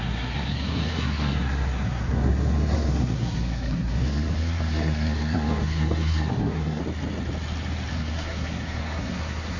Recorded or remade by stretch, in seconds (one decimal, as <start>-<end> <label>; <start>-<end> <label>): 0.0-6.8 remade; 6.8-7.9 recorded; 7.9-9.6 remade